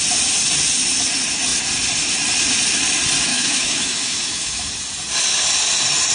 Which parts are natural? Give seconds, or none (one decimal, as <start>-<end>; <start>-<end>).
0.0-3.3; 4.7-6.1